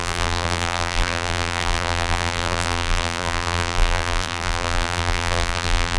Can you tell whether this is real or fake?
fake